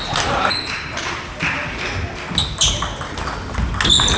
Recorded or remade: recorded